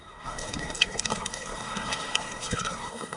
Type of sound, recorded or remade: remade